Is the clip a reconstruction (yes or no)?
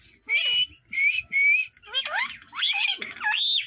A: no